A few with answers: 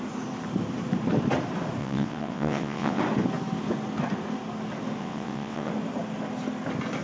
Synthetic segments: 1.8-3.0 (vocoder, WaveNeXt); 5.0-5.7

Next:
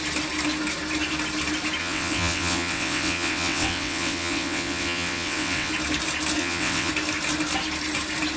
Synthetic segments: 1.8-5.7 (vocoder, WaveNeXt); 6.4-6.9

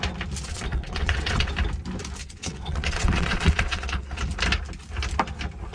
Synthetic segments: 0.5-1.5 (vocoder, WaveNeXt); 2.2-4.2